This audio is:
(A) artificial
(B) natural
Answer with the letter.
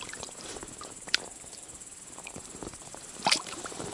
A